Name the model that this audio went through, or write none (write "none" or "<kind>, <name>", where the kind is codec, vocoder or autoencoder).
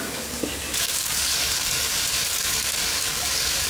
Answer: codec, DAC